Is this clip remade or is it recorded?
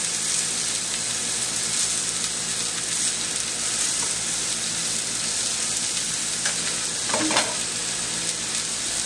recorded